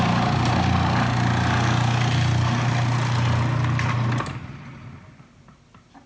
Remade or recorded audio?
recorded